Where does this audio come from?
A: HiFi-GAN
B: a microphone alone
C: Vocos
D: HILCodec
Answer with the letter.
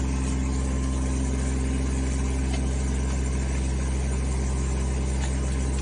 B